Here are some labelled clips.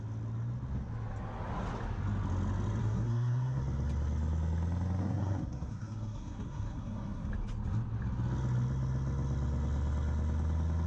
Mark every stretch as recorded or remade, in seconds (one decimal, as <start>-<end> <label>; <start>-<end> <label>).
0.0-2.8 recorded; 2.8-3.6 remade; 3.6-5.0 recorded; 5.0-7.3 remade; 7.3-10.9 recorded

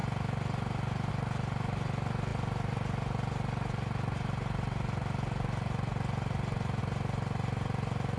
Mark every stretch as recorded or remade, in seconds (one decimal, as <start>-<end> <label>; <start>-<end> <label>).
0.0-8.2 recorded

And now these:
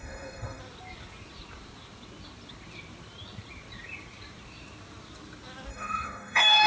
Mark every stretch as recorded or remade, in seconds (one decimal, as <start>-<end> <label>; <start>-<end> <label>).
0.0-0.6 remade; 0.6-5.7 recorded; 5.7-6.7 remade

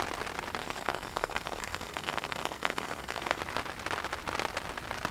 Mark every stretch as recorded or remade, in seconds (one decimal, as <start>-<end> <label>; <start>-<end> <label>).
0.0-0.6 recorded; 0.6-3.4 remade; 3.4-5.1 recorded

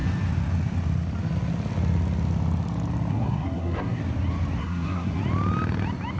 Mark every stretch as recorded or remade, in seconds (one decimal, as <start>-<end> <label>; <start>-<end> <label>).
0.0-3.1 recorded; 3.1-4.0 remade; 4.0-4.6 recorded; 4.6-5.2 remade; 5.2-6.2 recorded